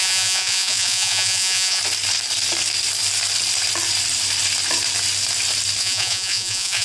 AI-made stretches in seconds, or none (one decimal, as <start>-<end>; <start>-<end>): 0.0-1.8; 5.8-6.8